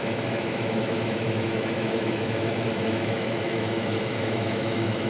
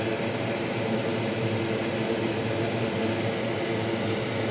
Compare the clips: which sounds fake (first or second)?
first